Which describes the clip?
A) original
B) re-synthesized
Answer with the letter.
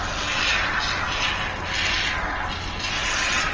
A